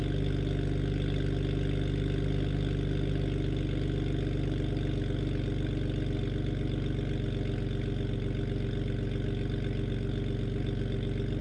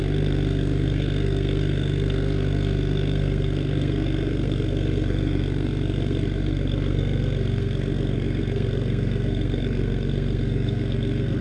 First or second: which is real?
first